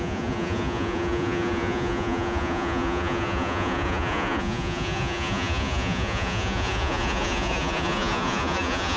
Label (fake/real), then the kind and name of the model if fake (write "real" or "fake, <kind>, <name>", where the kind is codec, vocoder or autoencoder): fake, vocoder, Vocos